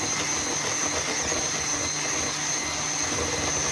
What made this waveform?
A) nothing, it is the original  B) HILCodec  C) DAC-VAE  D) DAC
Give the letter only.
A